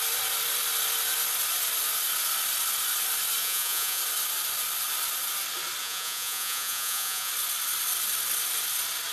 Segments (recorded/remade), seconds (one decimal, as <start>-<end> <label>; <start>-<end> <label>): 0.0-3.4 recorded; 3.4-4.0 remade; 4.0-5.8 recorded; 5.8-7.3 remade; 7.3-9.1 recorded